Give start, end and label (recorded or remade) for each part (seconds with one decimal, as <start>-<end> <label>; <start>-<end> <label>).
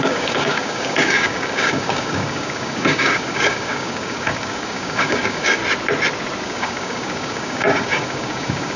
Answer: 0.0-5.6 remade; 5.6-6.4 recorded; 6.4-8.8 remade